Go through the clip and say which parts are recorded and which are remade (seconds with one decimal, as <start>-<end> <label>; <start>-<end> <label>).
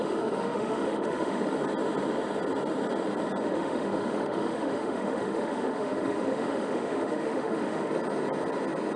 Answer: 0.0-1.4 remade; 1.4-3.4 recorded; 3.4-7.9 remade; 7.9-9.0 recorded